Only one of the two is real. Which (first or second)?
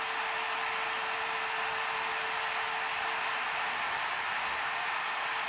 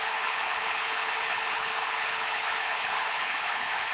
first